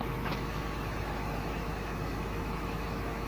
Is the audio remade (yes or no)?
yes